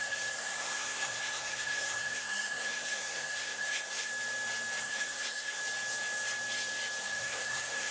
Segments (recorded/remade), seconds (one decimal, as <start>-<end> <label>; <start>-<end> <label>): 0.0-4.1 remade; 4.1-4.8 recorded; 4.8-5.6 remade; 5.6-7.0 recorded; 7.0-7.9 remade